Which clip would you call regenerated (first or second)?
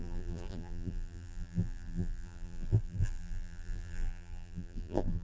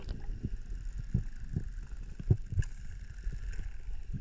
first